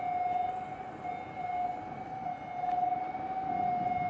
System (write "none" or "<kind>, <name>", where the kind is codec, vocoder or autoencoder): none